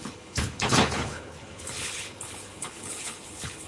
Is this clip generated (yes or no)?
yes